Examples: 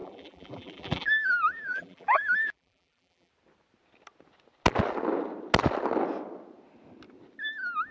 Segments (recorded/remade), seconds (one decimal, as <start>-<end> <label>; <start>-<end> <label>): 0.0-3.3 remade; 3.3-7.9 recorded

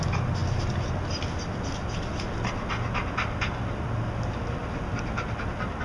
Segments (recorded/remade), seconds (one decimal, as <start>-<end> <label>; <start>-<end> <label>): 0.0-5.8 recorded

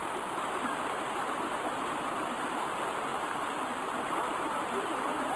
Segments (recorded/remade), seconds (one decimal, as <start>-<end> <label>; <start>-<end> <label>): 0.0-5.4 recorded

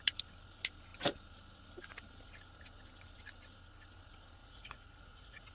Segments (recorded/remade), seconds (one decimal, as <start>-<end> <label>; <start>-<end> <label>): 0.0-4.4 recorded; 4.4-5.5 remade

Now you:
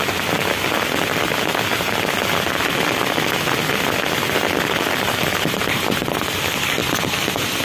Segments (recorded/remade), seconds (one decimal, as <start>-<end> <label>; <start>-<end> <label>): 0.0-7.6 recorded

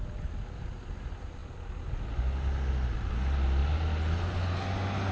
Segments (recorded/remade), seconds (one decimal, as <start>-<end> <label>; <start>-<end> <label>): 0.0-5.1 recorded